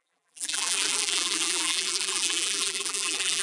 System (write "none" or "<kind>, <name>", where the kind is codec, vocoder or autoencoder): vocoder, BigVGAN v2